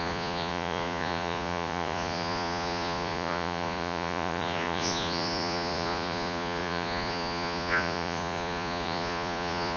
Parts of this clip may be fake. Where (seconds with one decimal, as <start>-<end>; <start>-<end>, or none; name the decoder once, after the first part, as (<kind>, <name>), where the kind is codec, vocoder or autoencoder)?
0.0-9.8 (vocoder, Vocos)